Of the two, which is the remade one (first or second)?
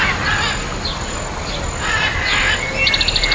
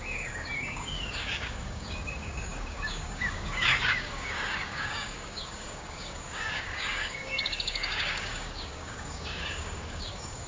second